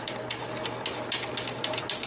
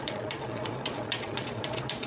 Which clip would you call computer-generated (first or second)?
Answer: second